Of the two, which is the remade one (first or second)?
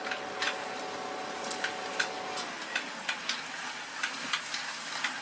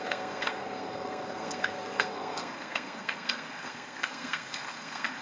second